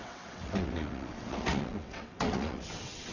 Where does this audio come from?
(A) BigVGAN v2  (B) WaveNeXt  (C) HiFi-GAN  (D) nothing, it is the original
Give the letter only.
B